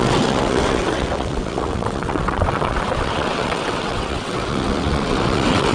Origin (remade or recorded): remade